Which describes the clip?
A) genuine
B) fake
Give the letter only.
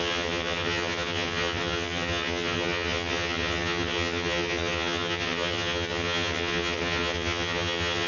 B